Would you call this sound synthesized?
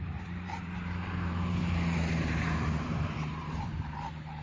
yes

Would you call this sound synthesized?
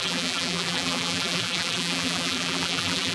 yes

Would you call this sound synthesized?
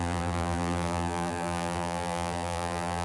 yes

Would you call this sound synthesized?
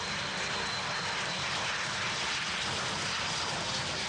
yes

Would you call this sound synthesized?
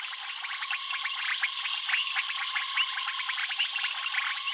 no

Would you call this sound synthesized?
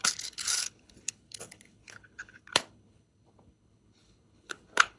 yes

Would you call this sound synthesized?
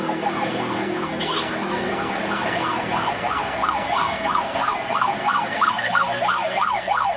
yes